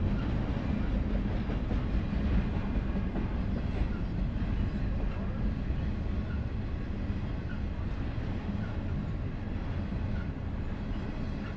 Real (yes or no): yes